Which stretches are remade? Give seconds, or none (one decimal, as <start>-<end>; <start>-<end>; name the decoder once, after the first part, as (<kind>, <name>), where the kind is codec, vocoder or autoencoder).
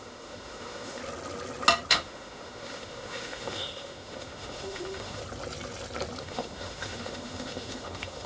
0.0-1.0 (autoencoder, DAC-VAE); 1.9-5.2; 6.2-8.3